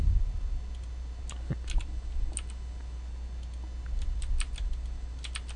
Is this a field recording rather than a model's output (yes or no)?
yes